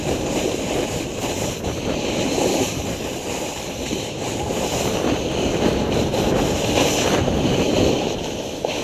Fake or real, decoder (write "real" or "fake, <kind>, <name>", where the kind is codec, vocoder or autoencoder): fake, vocoder, BigVGAN v2